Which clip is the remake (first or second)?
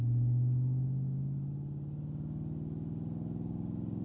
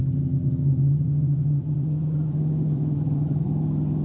second